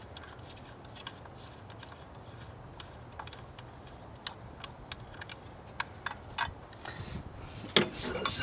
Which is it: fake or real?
real